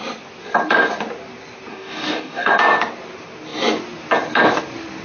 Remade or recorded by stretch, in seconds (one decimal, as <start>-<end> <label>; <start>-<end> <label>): 0.0-1.7 recorded; 1.7-2.5 remade; 2.5-5.0 recorded